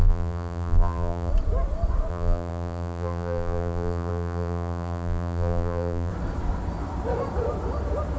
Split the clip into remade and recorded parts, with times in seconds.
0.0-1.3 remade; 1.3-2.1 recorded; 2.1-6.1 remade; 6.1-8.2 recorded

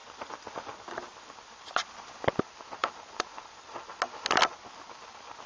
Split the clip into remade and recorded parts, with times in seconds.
0.0-1.9 remade; 1.9-2.8 recorded; 2.8-3.9 remade; 3.9-5.5 recorded

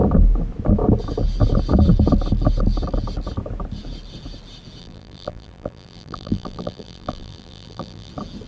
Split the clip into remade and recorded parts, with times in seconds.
0.0-4.8 recorded; 4.8-8.1 remade; 8.1-8.5 recorded